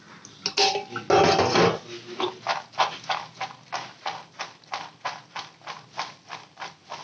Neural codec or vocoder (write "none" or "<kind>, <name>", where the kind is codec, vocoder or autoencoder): none